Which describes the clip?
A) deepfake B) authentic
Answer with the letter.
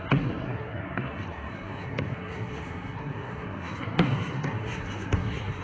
A